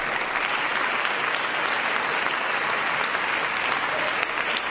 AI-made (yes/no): no